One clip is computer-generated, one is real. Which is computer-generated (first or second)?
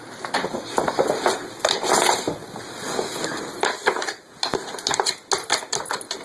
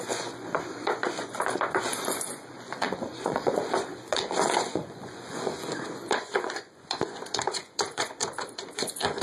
second